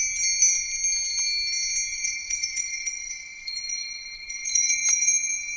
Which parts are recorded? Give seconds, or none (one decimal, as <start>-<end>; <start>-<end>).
0.0-1.9